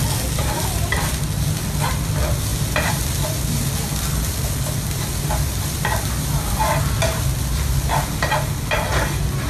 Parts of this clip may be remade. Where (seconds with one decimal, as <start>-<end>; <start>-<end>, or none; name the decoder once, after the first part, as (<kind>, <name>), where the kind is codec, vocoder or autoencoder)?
0.4-1.0 (vocoder, BigVGAN v2)